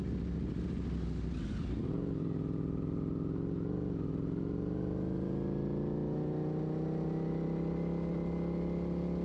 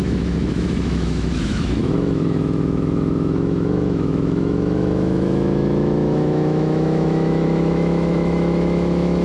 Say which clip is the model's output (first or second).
second